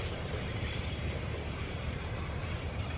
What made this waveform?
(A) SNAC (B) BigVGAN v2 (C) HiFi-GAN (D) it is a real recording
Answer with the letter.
B